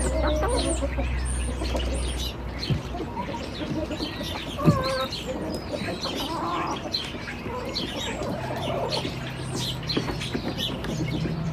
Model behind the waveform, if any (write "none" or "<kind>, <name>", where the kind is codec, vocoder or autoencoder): none